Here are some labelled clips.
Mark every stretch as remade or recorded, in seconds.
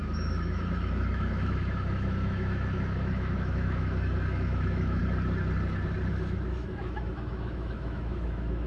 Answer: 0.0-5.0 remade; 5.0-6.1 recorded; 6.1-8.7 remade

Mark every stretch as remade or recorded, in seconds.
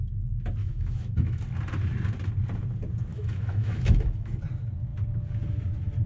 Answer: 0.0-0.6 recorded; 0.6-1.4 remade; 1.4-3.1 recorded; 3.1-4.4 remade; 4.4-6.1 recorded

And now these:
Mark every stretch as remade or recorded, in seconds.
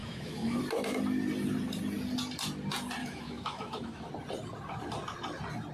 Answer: 0.0-0.6 remade; 0.6-3.0 recorded; 3.0-4.1 remade; 4.1-5.7 recorded